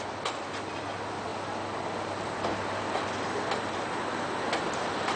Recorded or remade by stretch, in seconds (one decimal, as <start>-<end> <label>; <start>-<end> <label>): 0.0-5.2 recorded